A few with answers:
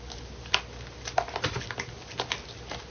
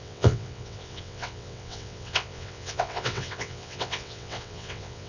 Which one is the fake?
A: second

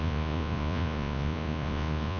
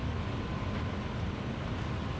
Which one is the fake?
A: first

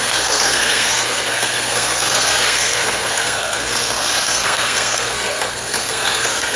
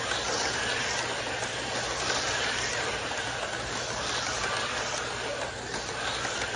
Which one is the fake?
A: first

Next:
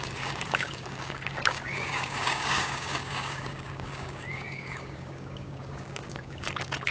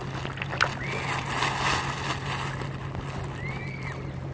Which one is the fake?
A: first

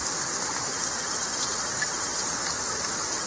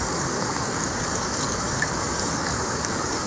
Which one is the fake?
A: second